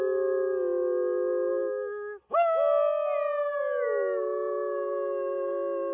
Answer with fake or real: real